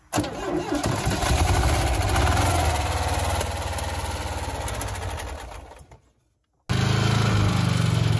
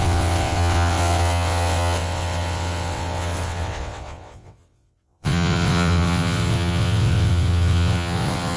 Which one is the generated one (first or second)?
second